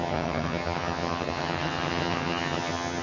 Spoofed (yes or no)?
yes